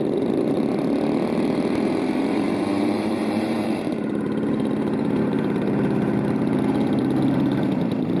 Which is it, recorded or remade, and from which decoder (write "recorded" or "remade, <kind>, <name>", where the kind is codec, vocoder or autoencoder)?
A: remade, vocoder, BigVGAN v2